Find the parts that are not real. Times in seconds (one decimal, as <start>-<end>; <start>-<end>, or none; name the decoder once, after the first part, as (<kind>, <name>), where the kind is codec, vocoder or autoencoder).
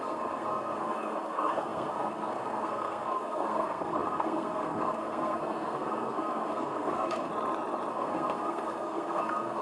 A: 0.0-7.3 (codec, SNAC); 7.9-9.6